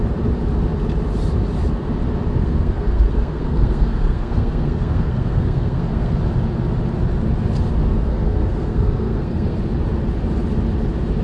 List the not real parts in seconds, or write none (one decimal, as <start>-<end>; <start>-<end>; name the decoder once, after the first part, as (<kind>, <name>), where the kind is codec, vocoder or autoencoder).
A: 2.4-6.2 (codec, SNAC); 7.8-9.6